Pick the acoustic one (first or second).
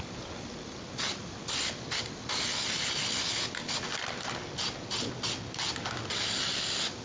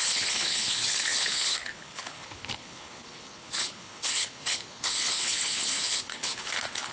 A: first